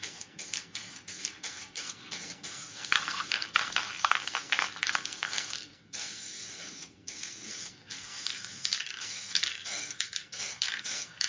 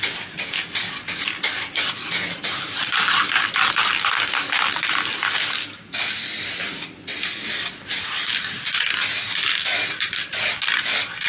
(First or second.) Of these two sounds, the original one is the second